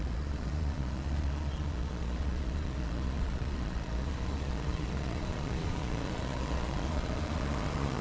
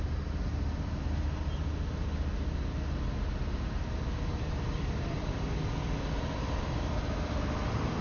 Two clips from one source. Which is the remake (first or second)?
first